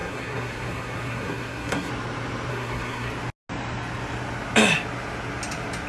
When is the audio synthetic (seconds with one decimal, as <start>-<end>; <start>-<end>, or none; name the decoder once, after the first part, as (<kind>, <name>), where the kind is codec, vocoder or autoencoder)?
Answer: 0.0-1.9 (codec, SNAC); 2.5-3.1